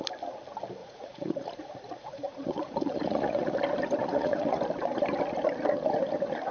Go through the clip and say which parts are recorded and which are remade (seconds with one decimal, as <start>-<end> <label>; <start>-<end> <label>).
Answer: 0.0-0.8 recorded; 0.8-3.6 remade; 3.6-4.0 recorded; 4.0-4.6 remade; 4.6-6.5 recorded